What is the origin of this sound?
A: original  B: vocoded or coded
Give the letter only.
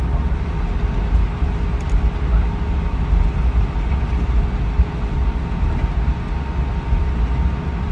A